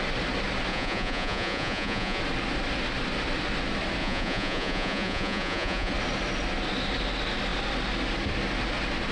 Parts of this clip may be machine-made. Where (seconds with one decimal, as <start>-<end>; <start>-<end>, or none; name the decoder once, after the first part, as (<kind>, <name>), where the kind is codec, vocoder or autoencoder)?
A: 0.7-2.2 (vocoder, Vocos); 4.0-5.9

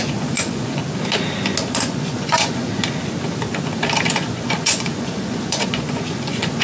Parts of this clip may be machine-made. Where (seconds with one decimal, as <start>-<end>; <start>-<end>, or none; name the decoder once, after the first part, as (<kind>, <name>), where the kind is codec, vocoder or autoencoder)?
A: 0.0-0.8 (vocoder, Vocos); 1.7-2.8; 4.1-6.6

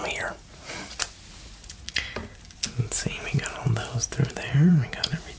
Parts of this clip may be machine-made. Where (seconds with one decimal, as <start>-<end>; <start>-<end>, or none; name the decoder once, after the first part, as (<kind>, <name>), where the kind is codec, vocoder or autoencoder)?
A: 0.0-2.2 (vocoder, Vocos); 4.3-5.4

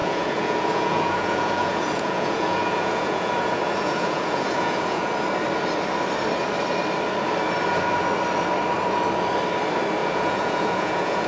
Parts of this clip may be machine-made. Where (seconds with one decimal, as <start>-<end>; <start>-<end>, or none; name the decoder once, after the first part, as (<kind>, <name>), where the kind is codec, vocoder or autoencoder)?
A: 0.0-5.1 (vocoder, Vocos); 10.0-11.3

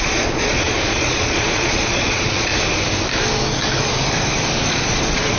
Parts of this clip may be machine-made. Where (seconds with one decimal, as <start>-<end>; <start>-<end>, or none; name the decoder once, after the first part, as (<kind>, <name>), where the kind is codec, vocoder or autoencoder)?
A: 0.0-2.5 (vocoder, Vocos); 4.7-5.4

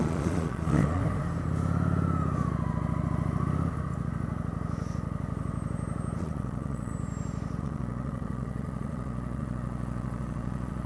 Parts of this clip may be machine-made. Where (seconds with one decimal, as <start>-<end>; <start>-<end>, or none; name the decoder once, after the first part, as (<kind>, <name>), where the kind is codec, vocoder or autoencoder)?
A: 0.0-1.0 (vocoder, Vocos); 6.2-6.9; 7.6-10.9

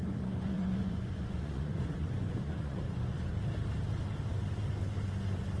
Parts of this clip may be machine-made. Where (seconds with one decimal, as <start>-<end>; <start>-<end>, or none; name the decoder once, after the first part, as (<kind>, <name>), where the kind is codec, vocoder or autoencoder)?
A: 0.0-3.3 (vocoder, Vocos)

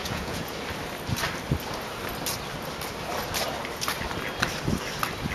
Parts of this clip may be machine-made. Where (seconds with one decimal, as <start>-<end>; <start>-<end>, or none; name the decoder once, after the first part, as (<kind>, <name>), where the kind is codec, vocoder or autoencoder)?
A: 0.0-0.5 (vocoder, Vocos)